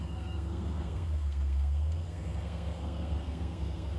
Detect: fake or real fake